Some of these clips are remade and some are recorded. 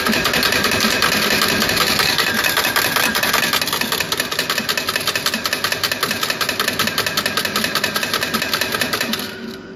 recorded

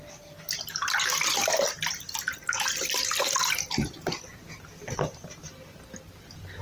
recorded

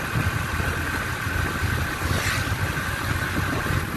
recorded